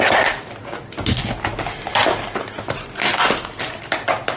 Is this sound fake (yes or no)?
no